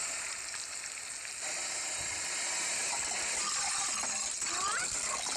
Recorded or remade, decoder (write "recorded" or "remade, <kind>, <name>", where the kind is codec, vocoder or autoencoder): recorded